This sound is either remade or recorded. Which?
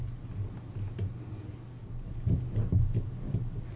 recorded